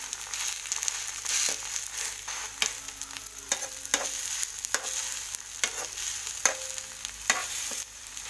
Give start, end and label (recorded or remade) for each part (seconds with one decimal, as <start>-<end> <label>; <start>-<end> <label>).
0.0-7.4 recorded; 7.4-8.3 remade